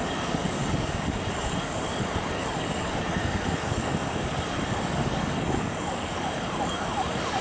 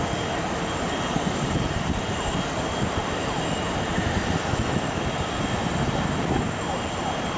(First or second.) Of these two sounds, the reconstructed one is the first